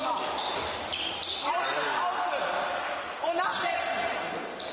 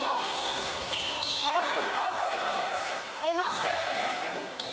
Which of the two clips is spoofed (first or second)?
second